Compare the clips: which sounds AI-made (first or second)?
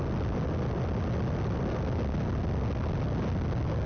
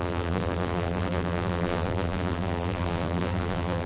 second